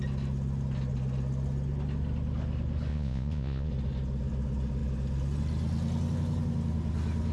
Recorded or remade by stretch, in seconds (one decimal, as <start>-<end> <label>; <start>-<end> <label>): 0.0-2.9 recorded; 2.9-3.7 remade; 3.7-7.3 recorded

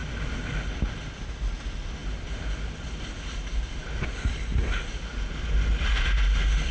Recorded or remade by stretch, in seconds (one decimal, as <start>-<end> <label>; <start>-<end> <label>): 0.0-6.7 recorded

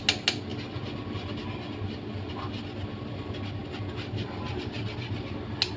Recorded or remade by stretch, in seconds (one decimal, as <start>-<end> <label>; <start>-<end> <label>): 0.0-5.8 recorded

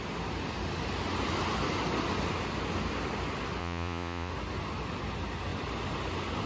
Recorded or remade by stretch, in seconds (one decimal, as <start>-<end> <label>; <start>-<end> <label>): 0.0-3.6 recorded; 3.6-4.3 remade; 4.3-6.5 recorded

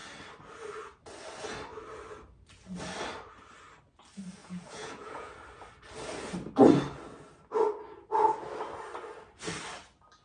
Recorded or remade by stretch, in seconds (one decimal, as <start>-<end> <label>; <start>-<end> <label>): 0.0-4.4 recorded; 4.4-5.3 remade; 5.3-10.2 recorded

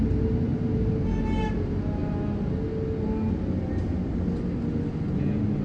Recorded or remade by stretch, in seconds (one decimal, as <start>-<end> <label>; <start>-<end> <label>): 0.0-5.6 recorded

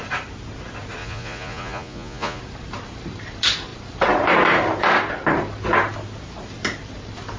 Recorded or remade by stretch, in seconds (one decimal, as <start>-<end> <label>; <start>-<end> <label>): 0.0-1.0 recorded; 1.0-2.4 remade; 2.4-7.4 recorded

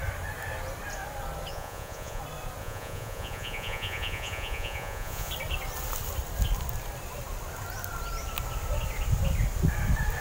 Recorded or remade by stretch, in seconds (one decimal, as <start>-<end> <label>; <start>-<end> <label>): 0.0-1.5 recorded; 1.5-2.2 remade; 2.2-2.6 recorded; 2.6-5.3 remade; 5.3-10.2 recorded